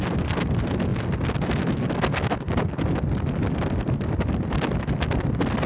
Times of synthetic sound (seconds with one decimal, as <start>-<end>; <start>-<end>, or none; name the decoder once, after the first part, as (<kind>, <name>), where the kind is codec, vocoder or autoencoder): none

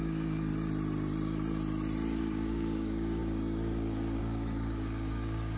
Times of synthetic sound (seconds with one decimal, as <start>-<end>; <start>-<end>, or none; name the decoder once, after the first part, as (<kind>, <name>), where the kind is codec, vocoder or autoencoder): 0.0-0.5 (codec, DAC); 2.2-5.6

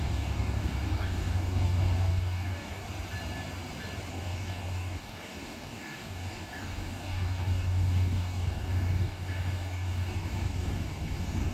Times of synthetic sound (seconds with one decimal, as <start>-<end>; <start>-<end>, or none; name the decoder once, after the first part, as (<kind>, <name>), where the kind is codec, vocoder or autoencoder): 0.0-2.8 (codec, DAC); 4.1-11.5

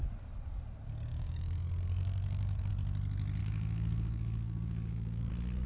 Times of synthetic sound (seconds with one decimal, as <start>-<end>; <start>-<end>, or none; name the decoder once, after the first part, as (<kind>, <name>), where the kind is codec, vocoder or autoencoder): 1.1-2.7 (codec, DAC); 3.4-5.3

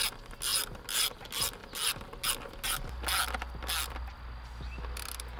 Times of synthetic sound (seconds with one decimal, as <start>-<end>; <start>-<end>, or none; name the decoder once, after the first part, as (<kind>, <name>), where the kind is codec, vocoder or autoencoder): none

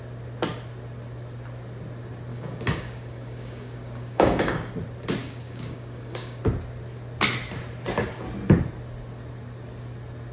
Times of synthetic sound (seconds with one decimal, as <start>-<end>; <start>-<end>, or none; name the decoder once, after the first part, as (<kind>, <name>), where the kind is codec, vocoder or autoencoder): 2.3-4.7 (codec, DAC); 5.2-6.4